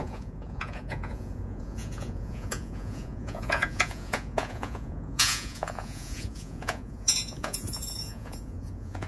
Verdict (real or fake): fake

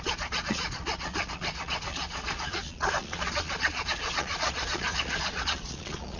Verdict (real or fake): fake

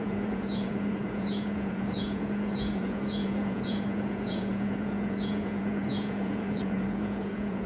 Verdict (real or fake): fake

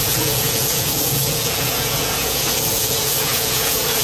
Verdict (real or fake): fake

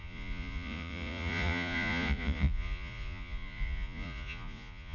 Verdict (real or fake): fake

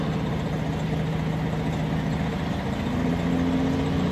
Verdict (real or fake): real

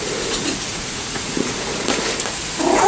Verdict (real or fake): fake